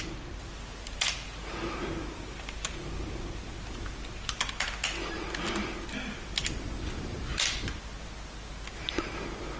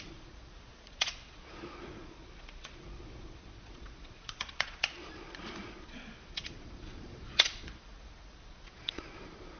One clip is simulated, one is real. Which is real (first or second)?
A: first